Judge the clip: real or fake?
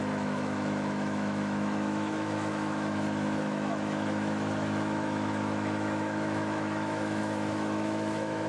fake